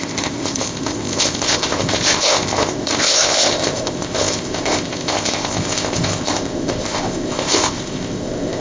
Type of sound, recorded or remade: remade